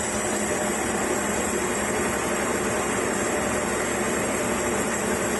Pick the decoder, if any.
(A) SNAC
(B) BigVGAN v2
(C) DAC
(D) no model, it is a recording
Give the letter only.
D